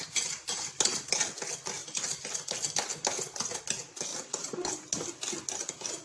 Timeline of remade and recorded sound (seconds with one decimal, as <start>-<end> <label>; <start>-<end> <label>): 0.0-6.0 recorded